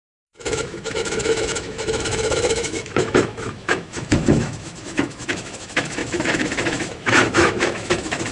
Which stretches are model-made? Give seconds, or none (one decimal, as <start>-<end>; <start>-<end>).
0.0-8.3